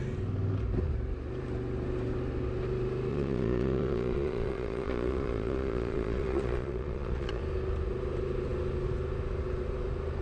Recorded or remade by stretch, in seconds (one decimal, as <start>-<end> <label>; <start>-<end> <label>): 0.0-3.1 recorded; 3.1-7.4 remade; 7.4-10.2 recorded